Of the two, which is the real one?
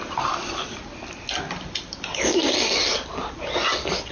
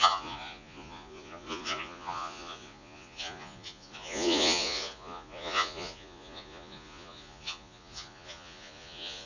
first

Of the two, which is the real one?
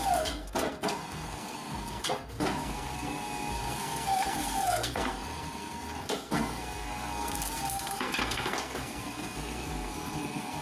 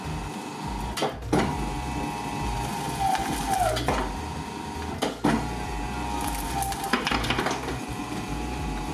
second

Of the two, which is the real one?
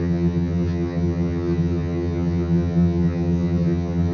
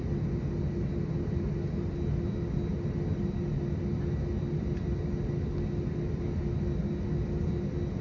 second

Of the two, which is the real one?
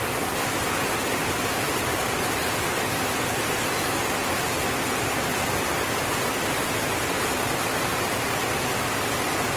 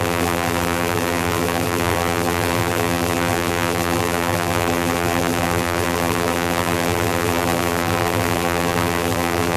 first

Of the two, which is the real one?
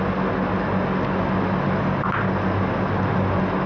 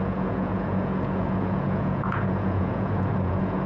first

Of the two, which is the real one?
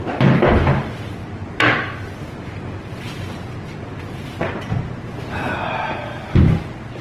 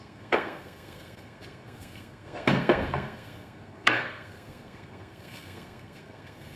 first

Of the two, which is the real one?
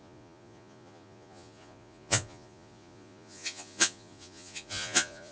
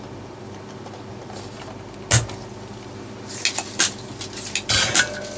second